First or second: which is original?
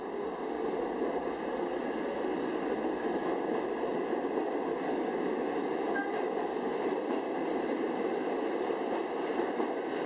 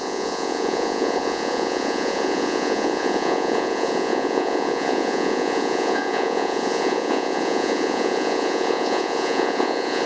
first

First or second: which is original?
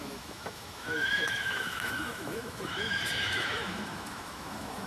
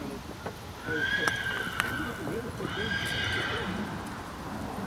second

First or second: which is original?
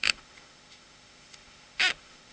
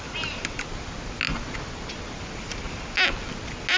second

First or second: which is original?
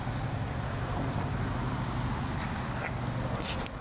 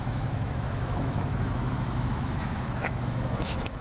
first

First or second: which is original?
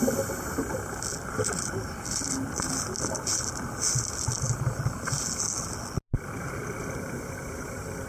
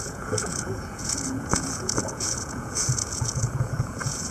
first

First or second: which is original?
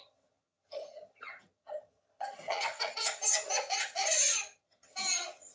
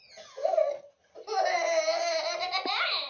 second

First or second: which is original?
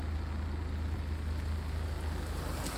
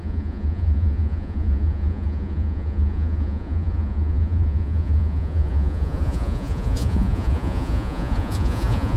first